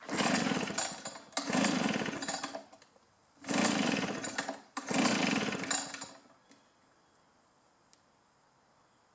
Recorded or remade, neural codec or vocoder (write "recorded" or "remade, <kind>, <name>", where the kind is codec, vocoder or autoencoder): recorded